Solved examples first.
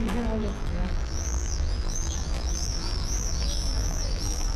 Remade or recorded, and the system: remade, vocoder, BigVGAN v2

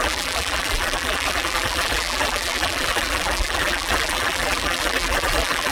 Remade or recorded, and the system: remade, vocoder, BigVGAN v2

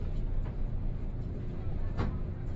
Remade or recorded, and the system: recorded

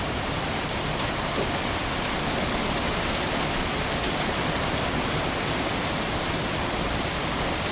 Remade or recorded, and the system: recorded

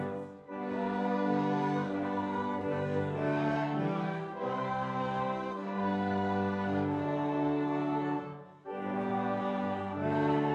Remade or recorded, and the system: remade, codec, DAC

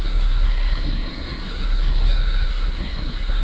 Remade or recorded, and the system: remade, codec, SNAC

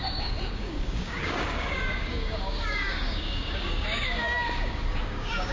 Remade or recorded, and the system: remade, codec, DAC